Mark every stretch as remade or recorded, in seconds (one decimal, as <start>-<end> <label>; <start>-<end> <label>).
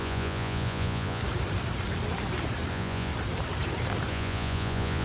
0.0-1.2 remade; 1.2-2.7 recorded; 2.7-3.1 remade; 3.1-4.1 recorded; 4.1-5.0 remade